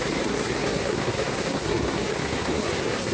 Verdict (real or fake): fake